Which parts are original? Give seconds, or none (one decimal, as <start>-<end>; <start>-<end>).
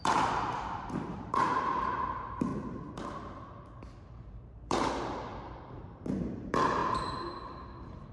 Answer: 2.5-4.3; 5.3-6.2